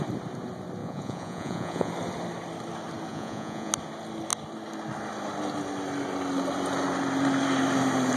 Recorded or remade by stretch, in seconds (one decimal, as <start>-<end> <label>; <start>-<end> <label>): 0.0-0.8 recorded; 0.8-1.9 remade; 1.9-3.1 recorded; 3.1-3.7 remade; 3.7-8.2 recorded